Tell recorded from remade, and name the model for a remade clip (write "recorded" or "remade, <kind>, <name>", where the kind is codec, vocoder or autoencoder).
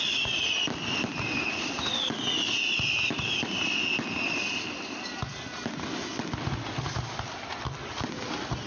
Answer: recorded